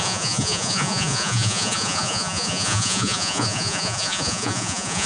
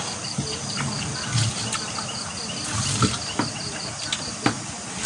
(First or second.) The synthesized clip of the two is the first